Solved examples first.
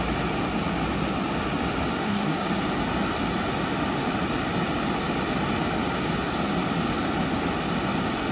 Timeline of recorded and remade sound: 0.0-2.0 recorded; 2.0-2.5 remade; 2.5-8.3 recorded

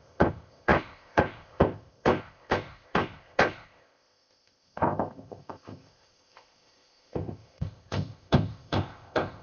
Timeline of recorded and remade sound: 0.0-9.4 remade

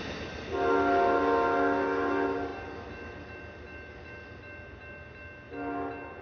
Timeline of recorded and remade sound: 0.0-6.2 recorded